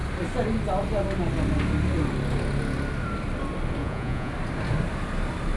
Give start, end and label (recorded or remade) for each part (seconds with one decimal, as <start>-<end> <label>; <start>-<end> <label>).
0.0-3.8 recorded; 3.8-4.3 remade; 4.3-5.6 recorded